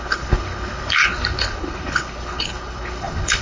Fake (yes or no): yes